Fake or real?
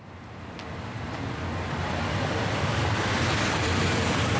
real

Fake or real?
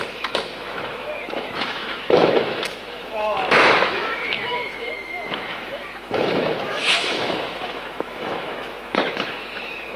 fake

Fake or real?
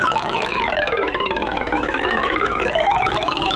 fake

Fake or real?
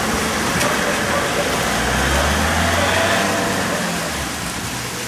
real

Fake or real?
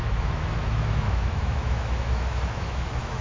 fake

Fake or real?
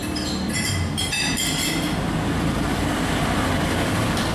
real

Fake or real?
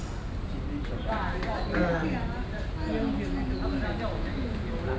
real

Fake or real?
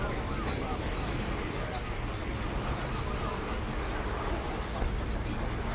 real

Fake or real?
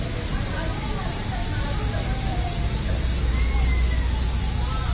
real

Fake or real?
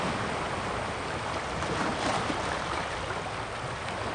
real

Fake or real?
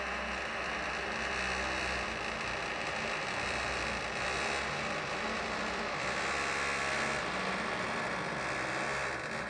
real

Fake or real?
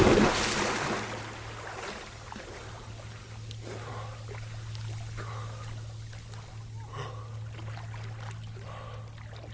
real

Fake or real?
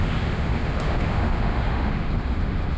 fake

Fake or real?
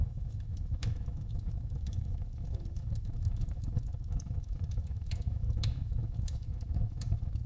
fake